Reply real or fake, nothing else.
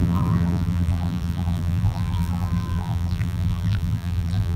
fake